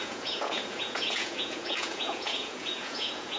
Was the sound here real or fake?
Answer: fake